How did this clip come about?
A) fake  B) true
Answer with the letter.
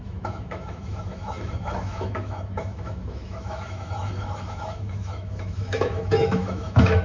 A